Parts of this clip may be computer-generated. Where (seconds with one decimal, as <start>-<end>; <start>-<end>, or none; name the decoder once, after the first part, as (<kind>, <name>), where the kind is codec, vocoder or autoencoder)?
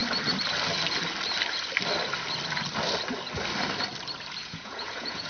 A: 4.4-5.3 (vocoder, Vocos)